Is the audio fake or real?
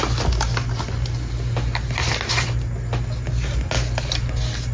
real